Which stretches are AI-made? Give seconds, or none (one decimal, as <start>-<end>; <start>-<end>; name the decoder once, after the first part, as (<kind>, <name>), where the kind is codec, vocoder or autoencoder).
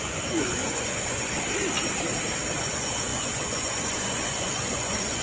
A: 0.0-1.3 (vocoder, Vocos); 2.6-5.2